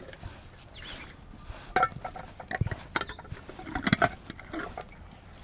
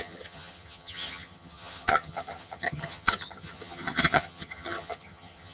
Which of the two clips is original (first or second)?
first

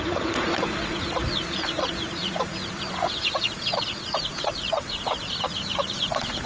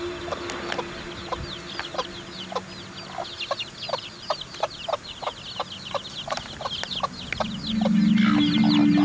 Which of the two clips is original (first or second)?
second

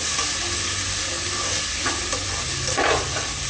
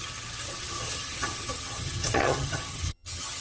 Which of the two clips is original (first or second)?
first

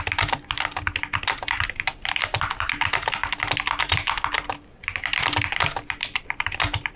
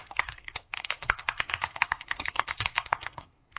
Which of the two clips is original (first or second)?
first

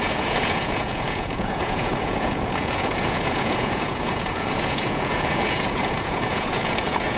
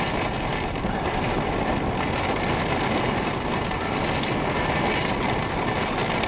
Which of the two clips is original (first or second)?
second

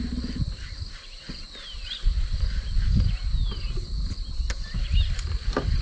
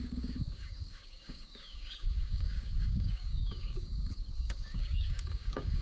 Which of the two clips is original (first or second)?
first